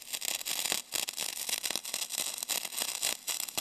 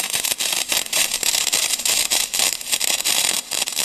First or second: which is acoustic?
first